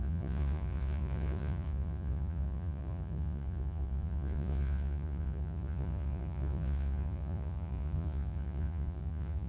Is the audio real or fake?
fake